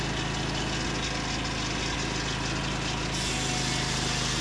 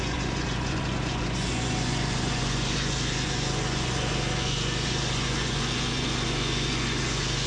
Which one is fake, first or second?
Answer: second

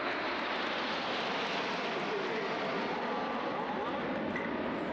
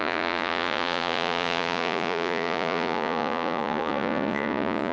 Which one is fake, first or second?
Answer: second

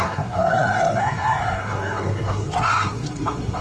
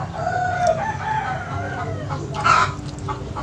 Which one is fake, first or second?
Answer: first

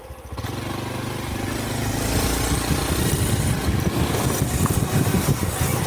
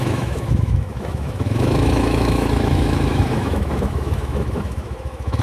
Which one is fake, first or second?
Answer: second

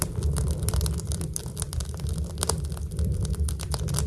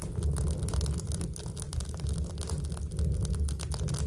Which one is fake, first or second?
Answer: first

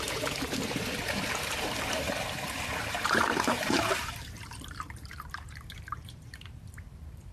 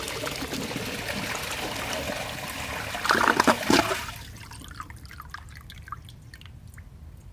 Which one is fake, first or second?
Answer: first